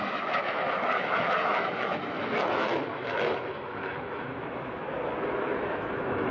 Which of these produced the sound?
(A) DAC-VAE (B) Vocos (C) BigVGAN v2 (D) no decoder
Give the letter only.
A